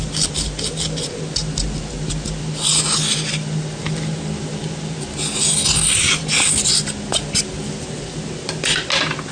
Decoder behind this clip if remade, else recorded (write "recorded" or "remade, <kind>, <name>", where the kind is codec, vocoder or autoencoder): recorded